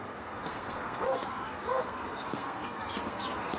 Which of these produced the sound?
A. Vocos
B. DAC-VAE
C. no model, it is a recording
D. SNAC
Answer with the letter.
D